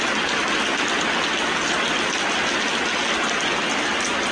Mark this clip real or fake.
real